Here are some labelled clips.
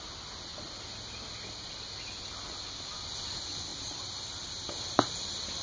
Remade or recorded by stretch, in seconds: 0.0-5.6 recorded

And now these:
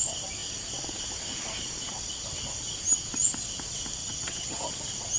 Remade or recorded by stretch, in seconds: 0.0-4.0 recorded; 4.0-4.7 remade; 4.7-5.2 recorded

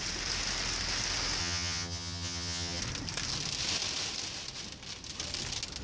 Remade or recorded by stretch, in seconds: 0.0-1.4 recorded; 1.4-2.8 remade; 2.8-5.8 recorded

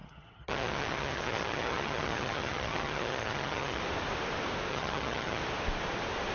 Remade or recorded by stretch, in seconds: 0.0-3.8 remade; 3.8-4.7 recorded; 4.7-5.4 remade; 5.4-6.3 recorded

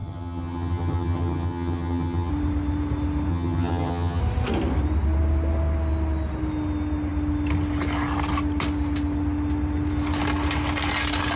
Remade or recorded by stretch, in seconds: 0.0-2.3 remade; 2.3-3.3 recorded; 3.3-4.2 remade; 4.2-11.4 recorded

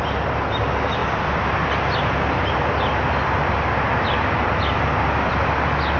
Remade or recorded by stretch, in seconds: 0.0-6.0 recorded

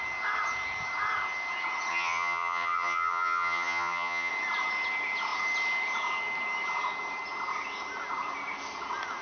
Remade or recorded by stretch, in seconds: 0.0-1.9 recorded; 1.9-4.3 remade; 4.3-9.2 recorded

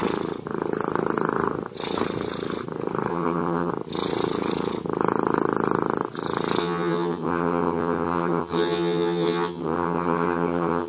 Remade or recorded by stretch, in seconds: 0.0-3.1 recorded; 3.1-3.7 remade; 3.7-6.6 recorded; 6.6-10.9 remade